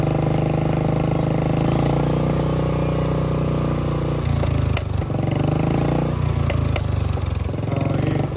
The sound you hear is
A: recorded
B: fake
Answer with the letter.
A